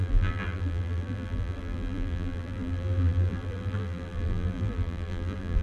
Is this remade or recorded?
remade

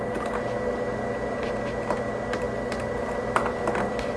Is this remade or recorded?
recorded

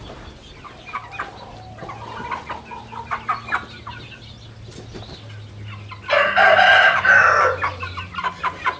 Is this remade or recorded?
recorded